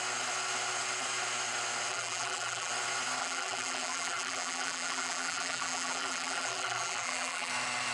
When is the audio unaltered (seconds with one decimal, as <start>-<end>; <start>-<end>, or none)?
0.0-1.9; 2.7-3.2; 7.5-7.9